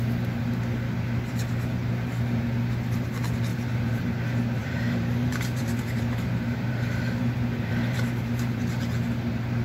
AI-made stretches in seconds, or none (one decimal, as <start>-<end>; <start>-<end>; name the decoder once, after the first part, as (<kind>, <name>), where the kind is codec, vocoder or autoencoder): 3.5-4.1 (vocoder, BigVGAN v2); 4.6-8.6